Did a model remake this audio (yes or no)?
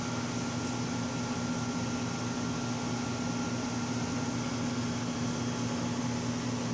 no